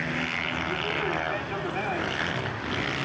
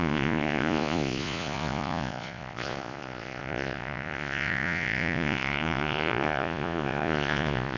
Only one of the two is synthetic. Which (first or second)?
second